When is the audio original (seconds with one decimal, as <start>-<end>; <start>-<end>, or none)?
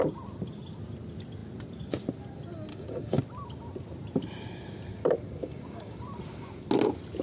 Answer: 0.0-2.7; 3.2-5.4; 6.0-7.2